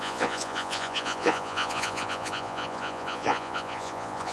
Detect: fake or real fake